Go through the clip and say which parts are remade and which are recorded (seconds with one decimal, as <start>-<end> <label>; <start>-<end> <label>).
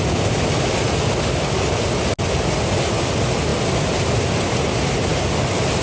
0.0-5.8 recorded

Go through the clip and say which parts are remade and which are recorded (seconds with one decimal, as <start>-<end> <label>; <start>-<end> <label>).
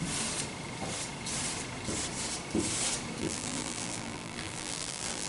0.0-3.2 recorded; 3.2-5.3 remade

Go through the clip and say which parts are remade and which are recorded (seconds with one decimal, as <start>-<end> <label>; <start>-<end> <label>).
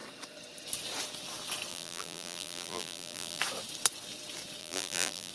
0.0-1.7 recorded; 1.7-3.4 remade; 3.4-4.6 recorded; 4.6-5.3 remade